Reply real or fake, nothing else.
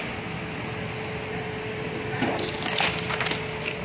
real